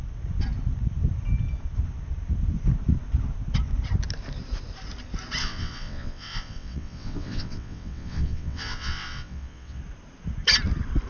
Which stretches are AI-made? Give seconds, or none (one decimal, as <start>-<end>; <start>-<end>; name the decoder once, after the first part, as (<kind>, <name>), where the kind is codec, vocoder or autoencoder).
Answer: 5.4-9.8 (vocoder, WaveNeXt)